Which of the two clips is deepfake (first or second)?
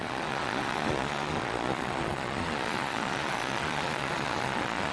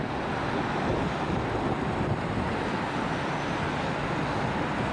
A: first